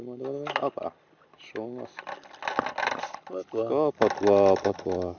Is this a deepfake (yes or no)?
no